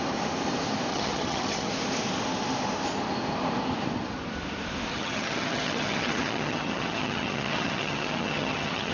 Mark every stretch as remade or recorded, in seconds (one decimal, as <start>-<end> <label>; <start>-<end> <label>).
0.0-0.9 recorded; 0.9-1.7 remade; 1.7-4.9 recorded; 4.9-8.9 remade